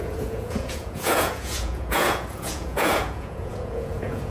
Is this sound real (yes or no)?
no